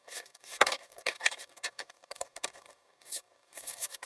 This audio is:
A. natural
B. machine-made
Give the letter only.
B